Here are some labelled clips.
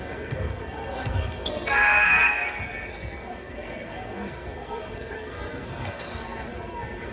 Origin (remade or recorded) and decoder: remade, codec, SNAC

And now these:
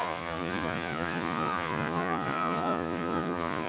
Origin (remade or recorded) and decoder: remade, vocoder, Vocos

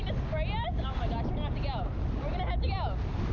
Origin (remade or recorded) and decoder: recorded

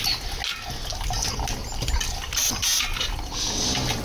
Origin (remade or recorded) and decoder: recorded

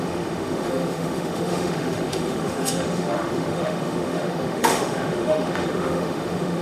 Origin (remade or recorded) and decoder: remade, autoencoder, DAC-VAE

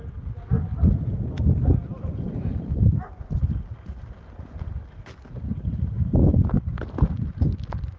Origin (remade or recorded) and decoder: recorded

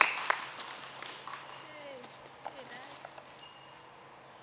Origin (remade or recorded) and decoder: recorded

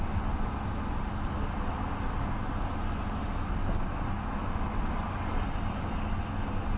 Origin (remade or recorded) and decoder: recorded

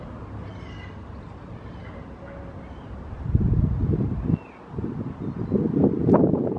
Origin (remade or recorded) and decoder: recorded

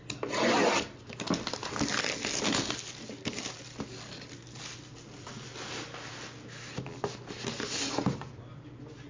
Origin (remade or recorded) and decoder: recorded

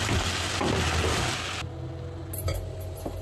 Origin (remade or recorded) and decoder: recorded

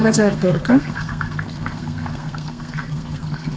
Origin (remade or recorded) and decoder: remade, codec, SNAC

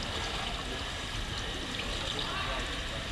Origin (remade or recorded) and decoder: recorded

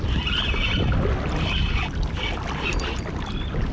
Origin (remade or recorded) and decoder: recorded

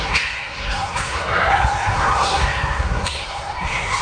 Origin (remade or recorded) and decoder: remade, codec, SNAC